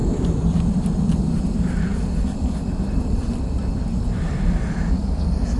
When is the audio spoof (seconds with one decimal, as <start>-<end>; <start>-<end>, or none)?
1.9-4.4